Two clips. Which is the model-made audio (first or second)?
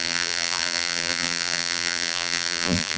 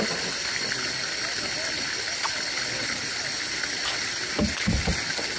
first